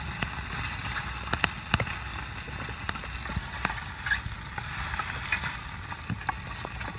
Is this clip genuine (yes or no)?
yes